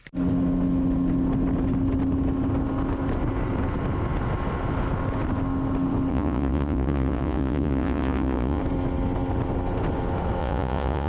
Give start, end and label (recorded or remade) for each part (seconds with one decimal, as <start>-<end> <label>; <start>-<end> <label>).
0.0-6.1 recorded; 6.1-8.6 remade; 8.6-10.4 recorded; 10.4-11.1 remade

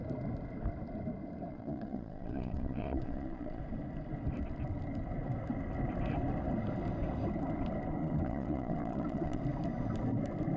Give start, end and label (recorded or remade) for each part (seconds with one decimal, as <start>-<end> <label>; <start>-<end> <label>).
0.0-1.5 recorded; 1.5-3.6 remade; 3.6-8.0 recorded; 8.0-9.4 remade; 9.4-10.6 recorded

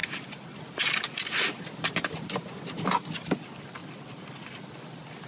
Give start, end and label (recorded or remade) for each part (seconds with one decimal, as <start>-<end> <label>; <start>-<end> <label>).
0.0-5.3 recorded

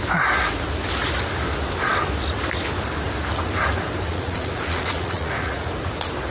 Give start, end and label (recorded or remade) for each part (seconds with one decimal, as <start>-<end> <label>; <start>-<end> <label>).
0.0-4.1 recorded; 4.1-5.7 remade; 5.7-6.3 recorded

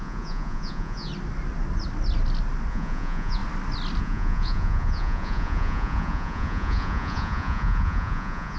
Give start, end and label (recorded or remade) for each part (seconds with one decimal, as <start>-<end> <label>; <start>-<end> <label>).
0.0-1.1 remade; 1.1-2.7 recorded; 2.7-3.4 remade; 3.4-4.0 recorded; 4.0-8.6 remade